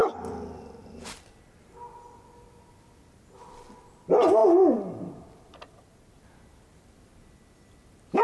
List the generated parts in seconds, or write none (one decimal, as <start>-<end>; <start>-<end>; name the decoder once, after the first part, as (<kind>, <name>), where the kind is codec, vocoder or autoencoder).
none